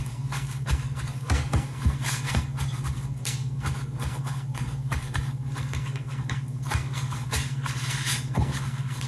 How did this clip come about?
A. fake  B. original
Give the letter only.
A